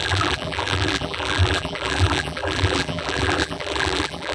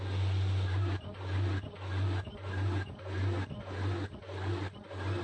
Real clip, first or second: second